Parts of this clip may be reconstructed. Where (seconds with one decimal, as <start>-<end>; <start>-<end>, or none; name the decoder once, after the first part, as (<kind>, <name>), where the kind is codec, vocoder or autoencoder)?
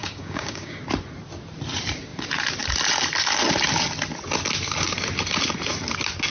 0.0-0.8 (codec, DAC)